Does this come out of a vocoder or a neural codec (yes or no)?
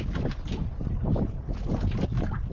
no